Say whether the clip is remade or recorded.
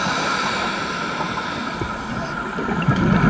recorded